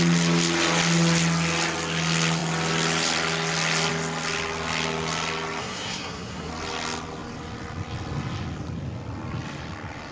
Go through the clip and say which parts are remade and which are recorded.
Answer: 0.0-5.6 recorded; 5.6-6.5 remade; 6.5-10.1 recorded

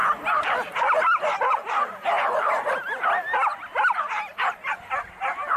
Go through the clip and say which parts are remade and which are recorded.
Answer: 0.0-5.6 recorded

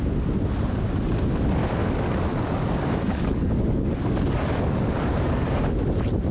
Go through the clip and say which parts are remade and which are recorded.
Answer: 0.0-1.8 recorded; 1.8-5.6 remade; 5.6-6.3 recorded